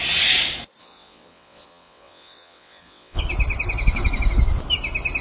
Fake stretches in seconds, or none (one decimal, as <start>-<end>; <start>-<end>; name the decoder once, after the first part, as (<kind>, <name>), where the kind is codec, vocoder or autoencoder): 0.8-3.2 (vocoder, WaveNeXt)